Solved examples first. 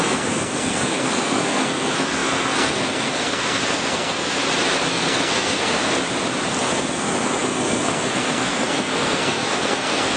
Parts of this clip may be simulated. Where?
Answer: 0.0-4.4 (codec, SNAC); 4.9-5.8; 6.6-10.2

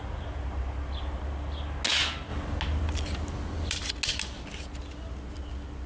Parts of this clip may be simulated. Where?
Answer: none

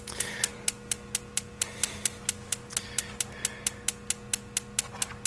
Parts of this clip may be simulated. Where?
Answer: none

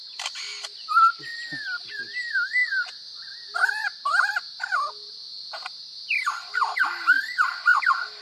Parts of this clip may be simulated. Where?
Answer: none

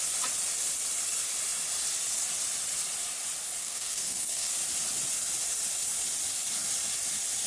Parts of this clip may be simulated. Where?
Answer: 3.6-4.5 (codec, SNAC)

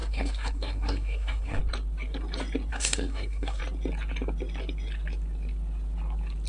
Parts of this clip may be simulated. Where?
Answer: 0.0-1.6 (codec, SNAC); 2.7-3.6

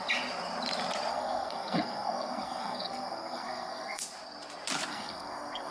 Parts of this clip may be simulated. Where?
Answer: 1.1-4.0 (codec, SNAC); 4.9-5.7